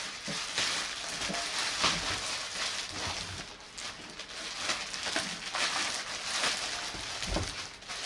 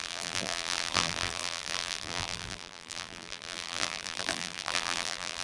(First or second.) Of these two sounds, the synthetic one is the second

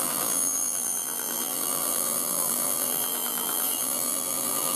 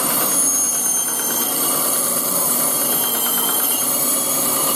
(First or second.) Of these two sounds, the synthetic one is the first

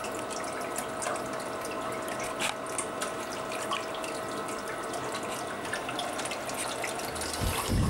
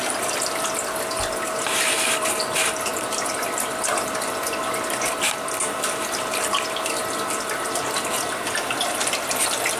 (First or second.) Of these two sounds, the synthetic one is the second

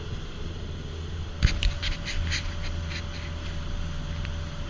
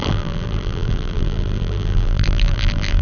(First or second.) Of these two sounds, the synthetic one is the second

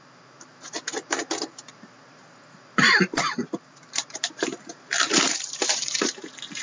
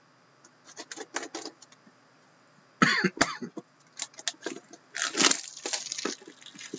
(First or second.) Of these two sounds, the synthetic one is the first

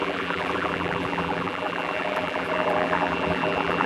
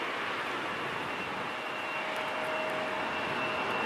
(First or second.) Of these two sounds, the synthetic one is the first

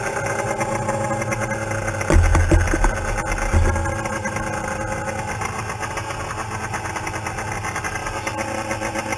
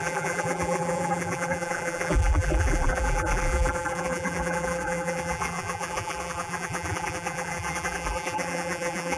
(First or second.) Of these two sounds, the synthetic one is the second